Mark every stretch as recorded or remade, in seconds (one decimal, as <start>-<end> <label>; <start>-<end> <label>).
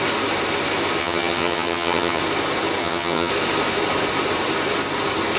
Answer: 0.0-1.0 recorded; 1.0-2.2 remade; 2.2-2.8 recorded; 2.8-3.3 remade; 3.3-5.4 recorded